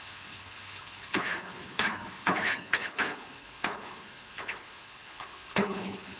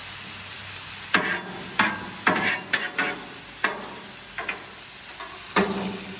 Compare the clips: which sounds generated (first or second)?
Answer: first